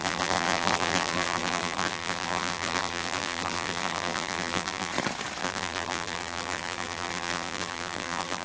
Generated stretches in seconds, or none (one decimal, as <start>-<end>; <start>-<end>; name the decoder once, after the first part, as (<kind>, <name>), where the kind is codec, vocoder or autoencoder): 0.0-4.9 (vocoder, BigVGAN v2); 5.4-8.4